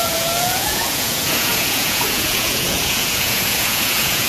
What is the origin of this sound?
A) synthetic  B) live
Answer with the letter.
A